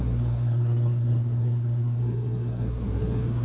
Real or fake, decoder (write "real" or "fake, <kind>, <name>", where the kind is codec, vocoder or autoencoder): fake, codec, SNAC